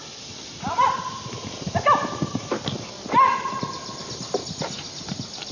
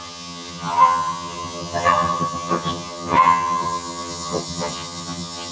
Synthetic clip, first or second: second